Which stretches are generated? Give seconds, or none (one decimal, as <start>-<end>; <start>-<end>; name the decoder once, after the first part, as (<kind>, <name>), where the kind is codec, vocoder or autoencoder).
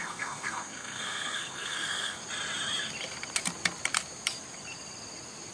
0.0-2.2 (codec, SNAC)